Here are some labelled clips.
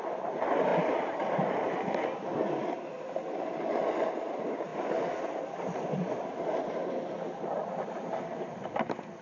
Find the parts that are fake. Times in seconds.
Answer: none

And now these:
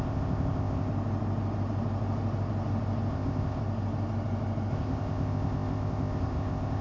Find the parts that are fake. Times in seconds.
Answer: 0.0-0.9 (codec, ZipCodec); 3.1-3.6; 4.7-6.8